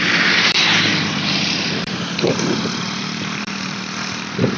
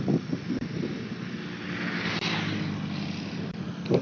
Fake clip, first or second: first